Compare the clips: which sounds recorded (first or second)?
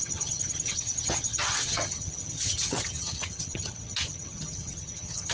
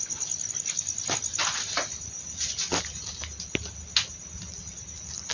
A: second